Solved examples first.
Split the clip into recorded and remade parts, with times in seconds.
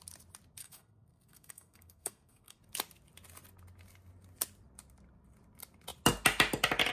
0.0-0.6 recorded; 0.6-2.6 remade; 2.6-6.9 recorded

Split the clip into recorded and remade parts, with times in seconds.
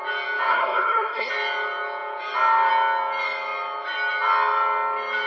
0.0-0.5 recorded; 0.5-1.3 remade; 1.3-5.3 recorded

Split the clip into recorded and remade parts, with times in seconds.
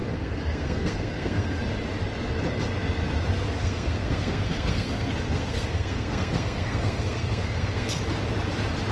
0.0-1.6 remade; 1.6-3.6 recorded; 3.6-8.0 remade; 8.0-8.9 recorded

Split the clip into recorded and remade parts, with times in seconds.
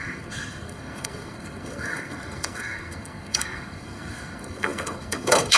0.0-5.6 remade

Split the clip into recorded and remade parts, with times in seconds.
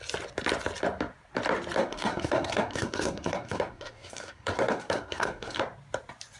0.0-1.8 recorded; 1.8-5.6 remade; 5.6-6.4 recorded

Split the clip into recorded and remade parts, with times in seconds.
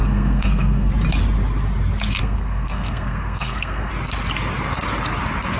0.0-0.9 remade; 0.9-2.2 recorded; 2.2-3.9 remade; 3.9-5.6 recorded